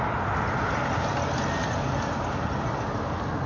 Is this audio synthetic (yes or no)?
no